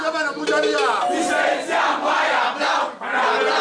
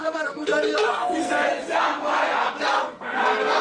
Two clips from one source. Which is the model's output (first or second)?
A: second